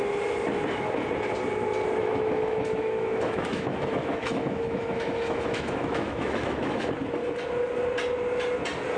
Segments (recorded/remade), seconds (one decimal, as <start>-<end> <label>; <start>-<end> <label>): 0.0-2.0 recorded; 2.0-6.9 remade; 6.9-9.0 recorded